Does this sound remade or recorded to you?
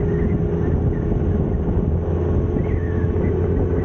recorded